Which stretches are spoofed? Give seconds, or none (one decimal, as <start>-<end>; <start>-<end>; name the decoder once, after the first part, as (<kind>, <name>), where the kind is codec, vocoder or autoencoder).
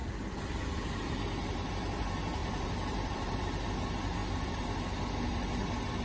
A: 0.0-1.2 (vocoder, BigVGAN v2); 2.4-3.4